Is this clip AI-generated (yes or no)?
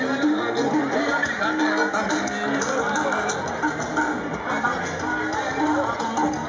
no